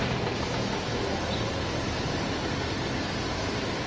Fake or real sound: real